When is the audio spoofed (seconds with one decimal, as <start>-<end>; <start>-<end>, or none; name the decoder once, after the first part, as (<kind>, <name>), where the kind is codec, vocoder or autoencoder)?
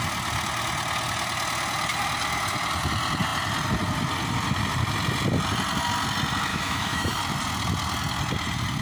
6.5-7.2 (autoencoder, DAC-VAE)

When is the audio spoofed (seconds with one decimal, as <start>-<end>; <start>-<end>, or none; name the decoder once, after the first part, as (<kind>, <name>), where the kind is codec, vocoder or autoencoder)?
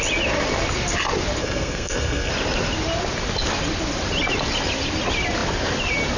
1.4-2.3 (codec, SNAC)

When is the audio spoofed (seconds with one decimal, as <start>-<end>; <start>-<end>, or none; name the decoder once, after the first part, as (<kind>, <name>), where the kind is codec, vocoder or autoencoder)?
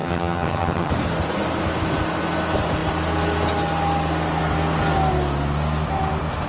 0.0-0.9 (vocoder, HiFi-GAN)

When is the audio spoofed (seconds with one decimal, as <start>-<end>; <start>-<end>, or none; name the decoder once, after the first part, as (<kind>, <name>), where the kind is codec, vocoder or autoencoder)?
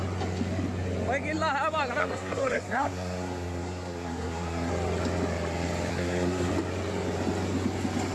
2.0-4.7 (codec, SNAC); 5.9-6.5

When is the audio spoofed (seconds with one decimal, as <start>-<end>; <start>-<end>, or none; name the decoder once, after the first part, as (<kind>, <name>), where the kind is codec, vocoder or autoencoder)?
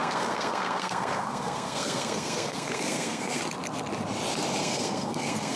0.0-3.4 (codec, SNAC); 4.6-5.6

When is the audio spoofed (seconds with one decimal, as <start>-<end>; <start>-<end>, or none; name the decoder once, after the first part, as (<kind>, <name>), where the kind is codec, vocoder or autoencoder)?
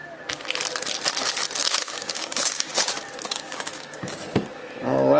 1.6-2.9 (codec, DAC); 3.3-4.4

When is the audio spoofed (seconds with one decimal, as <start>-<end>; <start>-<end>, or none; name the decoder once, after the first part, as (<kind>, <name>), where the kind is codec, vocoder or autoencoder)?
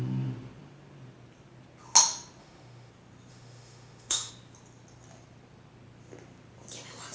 2.4-2.9 (autoencoder, DAC-VAE); 3.3-4.3